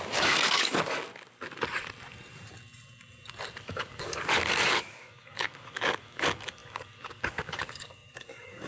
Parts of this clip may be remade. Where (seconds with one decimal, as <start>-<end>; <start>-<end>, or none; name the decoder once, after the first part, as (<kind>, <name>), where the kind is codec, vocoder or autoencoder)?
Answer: 0.0-1.1 (codec, DAC); 3.6-8.7